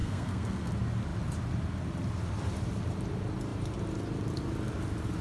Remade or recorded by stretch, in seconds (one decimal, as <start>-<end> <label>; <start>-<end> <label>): 0.0-0.7 remade; 0.7-5.2 recorded